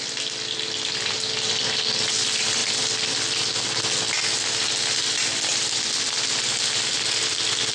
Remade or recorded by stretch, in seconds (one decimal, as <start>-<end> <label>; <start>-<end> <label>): 0.0-7.7 recorded